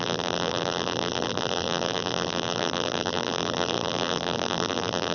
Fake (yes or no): yes